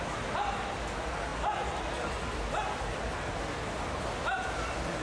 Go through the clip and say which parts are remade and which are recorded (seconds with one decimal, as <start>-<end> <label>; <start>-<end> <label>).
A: 0.0-5.0 recorded

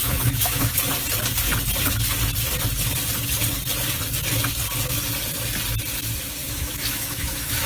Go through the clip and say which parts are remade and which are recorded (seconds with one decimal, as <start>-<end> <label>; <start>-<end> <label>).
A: 0.0-0.7 remade; 0.7-6.4 recorded; 6.4-7.7 remade

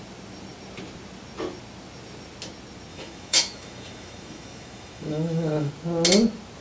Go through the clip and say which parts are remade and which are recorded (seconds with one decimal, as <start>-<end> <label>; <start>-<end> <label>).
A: 0.0-2.9 recorded; 2.9-5.7 remade; 5.7-6.6 recorded

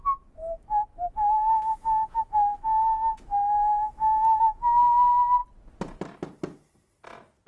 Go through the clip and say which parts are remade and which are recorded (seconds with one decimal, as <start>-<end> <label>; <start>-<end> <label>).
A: 0.0-5.4 remade; 5.4-7.5 recorded

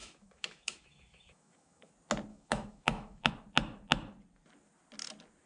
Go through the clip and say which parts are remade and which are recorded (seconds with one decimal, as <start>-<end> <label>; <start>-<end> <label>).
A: 0.0-1.9 remade; 1.9-2.3 recorded; 2.3-3.3 remade; 3.3-5.5 recorded

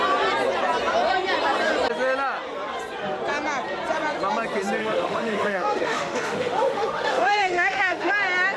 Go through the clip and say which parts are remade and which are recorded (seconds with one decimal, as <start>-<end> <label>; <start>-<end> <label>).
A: 0.0-4.8 recorded; 4.8-8.1 remade; 8.1-8.6 recorded

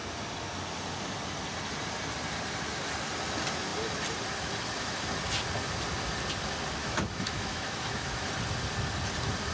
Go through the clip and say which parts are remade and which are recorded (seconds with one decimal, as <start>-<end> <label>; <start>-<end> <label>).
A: 0.0-6.8 recorded; 6.8-8.3 remade; 8.3-9.5 recorded

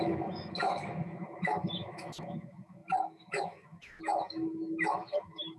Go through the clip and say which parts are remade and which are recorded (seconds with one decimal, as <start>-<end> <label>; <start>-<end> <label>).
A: 0.0-5.6 remade